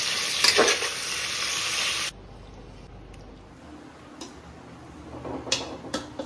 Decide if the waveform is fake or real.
real